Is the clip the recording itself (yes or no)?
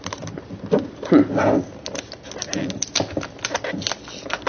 yes